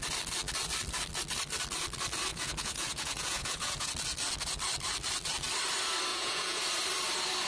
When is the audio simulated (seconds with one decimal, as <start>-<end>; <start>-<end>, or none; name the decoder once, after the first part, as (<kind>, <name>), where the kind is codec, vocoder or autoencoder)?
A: 2.3-3.9 (vocoder, Vocos); 6.1-6.6